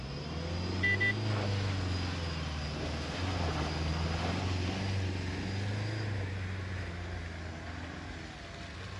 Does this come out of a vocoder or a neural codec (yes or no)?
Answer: no